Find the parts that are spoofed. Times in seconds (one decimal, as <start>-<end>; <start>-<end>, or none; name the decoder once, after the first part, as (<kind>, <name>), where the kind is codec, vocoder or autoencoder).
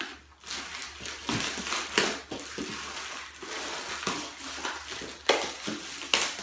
none